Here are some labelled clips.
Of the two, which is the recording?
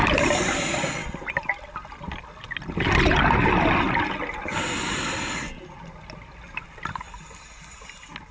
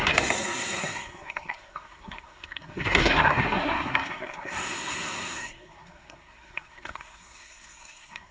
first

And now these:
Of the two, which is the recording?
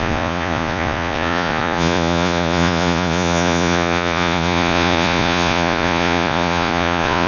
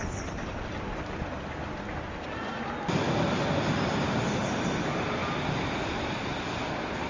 second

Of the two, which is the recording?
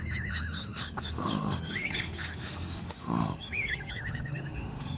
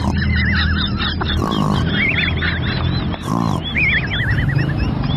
second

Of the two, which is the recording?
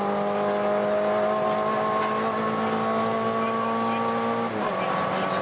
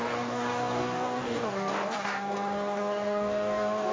first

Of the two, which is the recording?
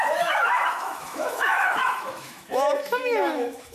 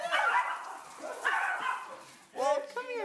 second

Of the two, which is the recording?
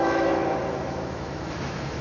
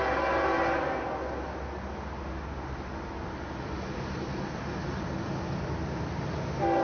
second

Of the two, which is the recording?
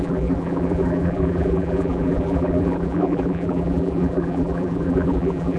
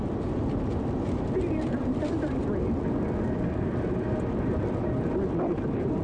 second